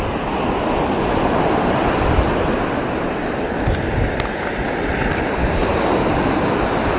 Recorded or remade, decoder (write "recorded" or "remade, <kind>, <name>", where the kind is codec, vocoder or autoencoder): recorded